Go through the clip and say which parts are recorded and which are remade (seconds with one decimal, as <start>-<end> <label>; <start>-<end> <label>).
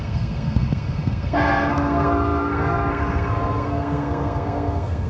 0.0-5.1 remade